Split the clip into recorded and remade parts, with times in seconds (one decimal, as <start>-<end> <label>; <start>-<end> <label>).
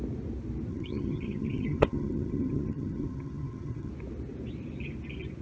0.0-0.7 recorded; 0.7-3.9 remade; 3.9-5.4 recorded